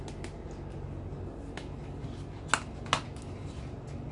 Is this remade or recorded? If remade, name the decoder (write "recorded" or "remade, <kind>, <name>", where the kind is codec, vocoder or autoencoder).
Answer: recorded